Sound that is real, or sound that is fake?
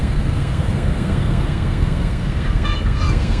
fake